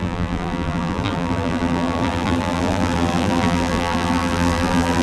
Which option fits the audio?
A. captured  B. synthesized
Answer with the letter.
B